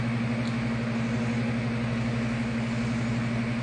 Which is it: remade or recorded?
recorded